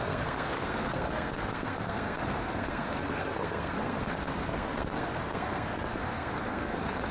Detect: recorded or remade remade